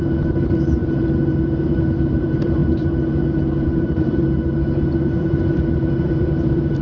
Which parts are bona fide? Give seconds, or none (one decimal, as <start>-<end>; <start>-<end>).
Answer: none